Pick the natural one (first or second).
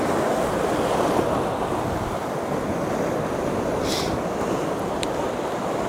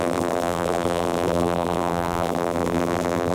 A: first